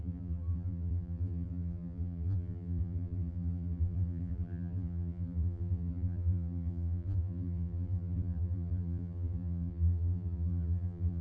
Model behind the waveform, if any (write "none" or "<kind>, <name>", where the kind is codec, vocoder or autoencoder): vocoder, BigVGAN v2